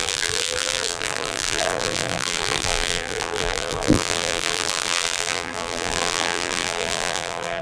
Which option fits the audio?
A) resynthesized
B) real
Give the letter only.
A